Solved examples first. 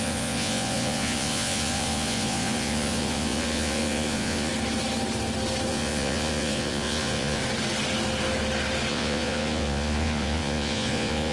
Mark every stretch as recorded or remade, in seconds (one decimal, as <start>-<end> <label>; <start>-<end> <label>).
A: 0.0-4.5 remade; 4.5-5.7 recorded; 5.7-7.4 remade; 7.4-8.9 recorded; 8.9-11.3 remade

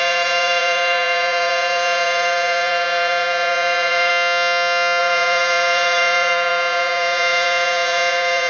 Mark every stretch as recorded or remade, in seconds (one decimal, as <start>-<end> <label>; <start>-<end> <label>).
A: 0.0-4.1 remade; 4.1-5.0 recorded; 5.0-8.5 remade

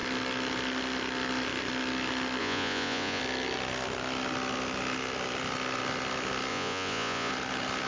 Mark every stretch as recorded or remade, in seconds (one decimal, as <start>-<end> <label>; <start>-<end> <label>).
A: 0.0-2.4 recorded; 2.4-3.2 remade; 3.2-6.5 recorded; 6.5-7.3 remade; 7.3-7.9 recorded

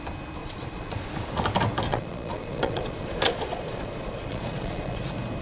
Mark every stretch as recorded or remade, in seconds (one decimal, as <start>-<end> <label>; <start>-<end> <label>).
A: 0.0-0.4 recorded; 0.4-1.1 remade; 1.1-1.9 recorded; 1.9-5.0 remade; 5.0-5.4 recorded